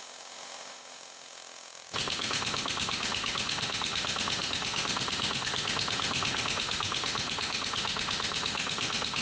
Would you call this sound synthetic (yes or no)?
yes